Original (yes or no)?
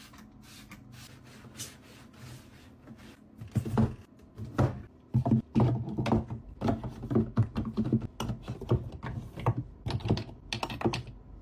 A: yes